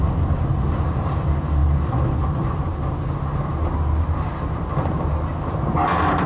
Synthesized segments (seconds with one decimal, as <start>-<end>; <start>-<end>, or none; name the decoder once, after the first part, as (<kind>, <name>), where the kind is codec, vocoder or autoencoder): none